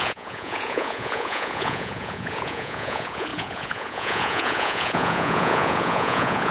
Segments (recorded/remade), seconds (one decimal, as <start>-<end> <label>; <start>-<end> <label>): 0.0-6.5 remade